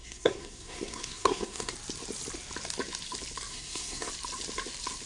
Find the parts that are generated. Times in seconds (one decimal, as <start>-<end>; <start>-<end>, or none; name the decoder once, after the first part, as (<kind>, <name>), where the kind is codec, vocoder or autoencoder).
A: 0.0-1.7 (codec, SNAC); 3.5-4.1